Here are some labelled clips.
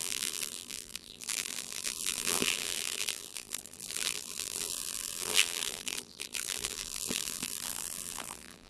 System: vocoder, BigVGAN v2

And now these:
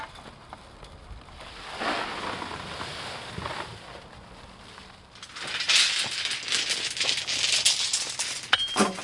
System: none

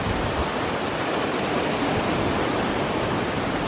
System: none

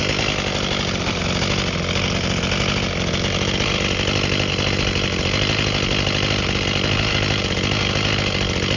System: none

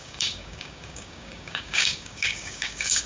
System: codec, DAC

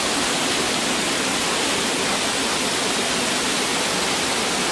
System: none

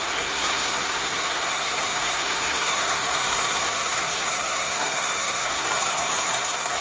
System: codec, SNAC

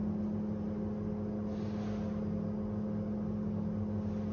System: none